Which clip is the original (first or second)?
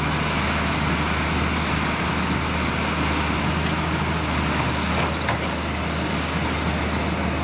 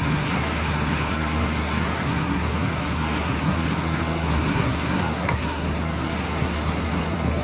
first